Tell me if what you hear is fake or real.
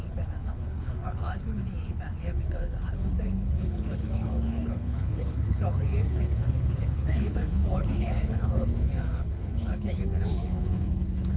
fake